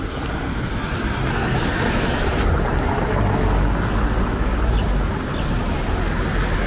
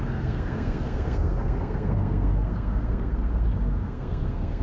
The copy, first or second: second